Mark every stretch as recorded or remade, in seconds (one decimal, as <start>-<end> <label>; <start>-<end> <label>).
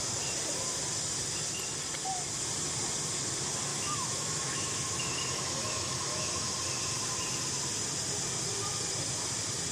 0.0-3.7 recorded; 3.7-6.5 remade; 6.5-9.7 recorded